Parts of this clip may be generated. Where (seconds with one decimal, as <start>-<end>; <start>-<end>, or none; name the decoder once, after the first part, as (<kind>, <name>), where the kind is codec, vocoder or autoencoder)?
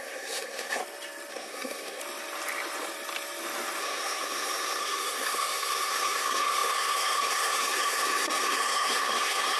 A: 0.0-0.8 (codec, SNAC); 1.3-2.0; 3.8-9.6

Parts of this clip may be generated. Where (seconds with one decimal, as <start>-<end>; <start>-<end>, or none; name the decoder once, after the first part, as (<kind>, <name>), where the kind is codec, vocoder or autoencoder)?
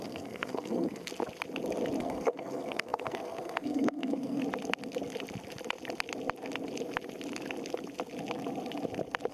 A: 0.0-1.1 (codec, SNAC); 2.0-4.4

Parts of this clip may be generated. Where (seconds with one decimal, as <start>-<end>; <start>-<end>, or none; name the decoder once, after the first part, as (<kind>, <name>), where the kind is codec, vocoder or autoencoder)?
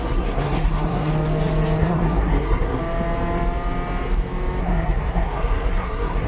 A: 0.0-1.1 (codec, SNAC); 1.8-2.8; 4.6-6.3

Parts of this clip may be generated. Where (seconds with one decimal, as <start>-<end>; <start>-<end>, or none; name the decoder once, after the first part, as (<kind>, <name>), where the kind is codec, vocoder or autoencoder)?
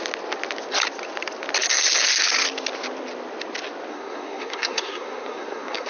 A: 3.9-5.9 (codec, SNAC)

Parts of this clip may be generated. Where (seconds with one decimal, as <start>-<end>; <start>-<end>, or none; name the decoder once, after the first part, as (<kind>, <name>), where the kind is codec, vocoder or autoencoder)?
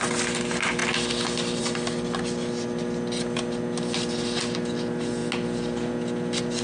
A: none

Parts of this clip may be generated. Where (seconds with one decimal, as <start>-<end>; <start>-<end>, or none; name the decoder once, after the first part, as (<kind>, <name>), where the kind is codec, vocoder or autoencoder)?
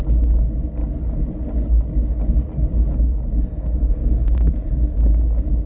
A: 3.5-4.7 (codec, SNAC)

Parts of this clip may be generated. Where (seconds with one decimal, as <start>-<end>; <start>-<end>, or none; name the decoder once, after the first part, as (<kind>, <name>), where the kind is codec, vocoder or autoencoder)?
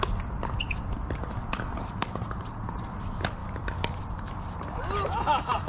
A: none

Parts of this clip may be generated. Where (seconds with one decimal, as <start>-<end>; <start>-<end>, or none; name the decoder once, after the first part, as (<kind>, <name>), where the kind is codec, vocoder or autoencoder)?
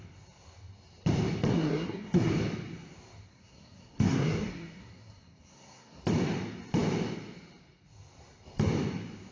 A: 1.5-2.3 (codec, SNAC); 3.3-6.0